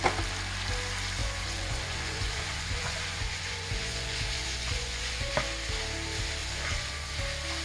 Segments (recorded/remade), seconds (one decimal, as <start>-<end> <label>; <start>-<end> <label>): 0.0-1.2 recorded; 1.2-5.3 remade; 5.3-6.4 recorded; 6.4-7.1 remade; 7.1-7.6 recorded